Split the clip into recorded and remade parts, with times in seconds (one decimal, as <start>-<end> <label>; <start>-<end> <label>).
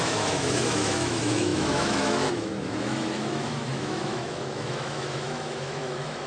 0.0-6.3 remade